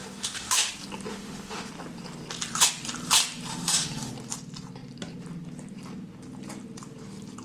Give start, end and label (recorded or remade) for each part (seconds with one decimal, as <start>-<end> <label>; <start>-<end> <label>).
0.0-0.7 remade; 0.7-1.1 recorded; 1.1-1.7 remade; 1.7-3.5 recorded; 3.5-4.1 remade; 4.1-7.4 recorded